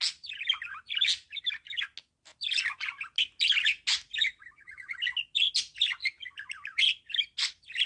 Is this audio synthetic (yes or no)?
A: no